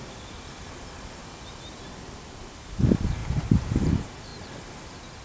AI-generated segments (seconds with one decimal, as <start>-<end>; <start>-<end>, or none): none